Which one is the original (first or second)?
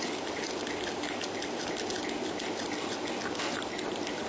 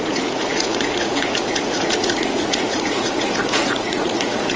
first